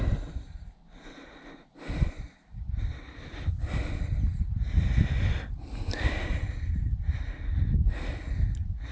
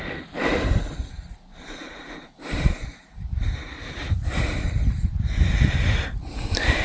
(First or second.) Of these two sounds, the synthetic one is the second